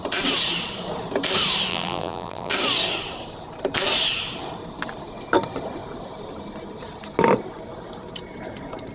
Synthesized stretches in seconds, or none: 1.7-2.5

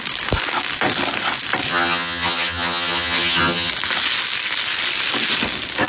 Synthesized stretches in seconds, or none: 1.7-3.7